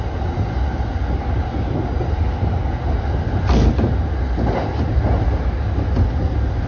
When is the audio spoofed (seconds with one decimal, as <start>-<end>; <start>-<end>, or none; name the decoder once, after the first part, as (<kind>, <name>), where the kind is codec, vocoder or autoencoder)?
none